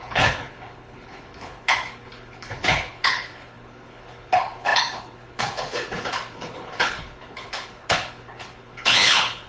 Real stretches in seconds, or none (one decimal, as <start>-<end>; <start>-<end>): none